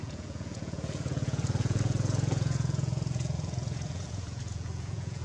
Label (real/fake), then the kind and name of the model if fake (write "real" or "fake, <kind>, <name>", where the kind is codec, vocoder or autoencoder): fake, vocoder, Vocos